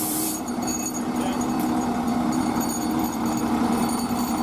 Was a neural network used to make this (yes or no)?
yes